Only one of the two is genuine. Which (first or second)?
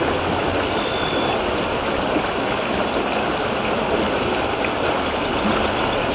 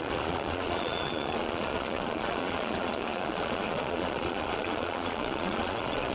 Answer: first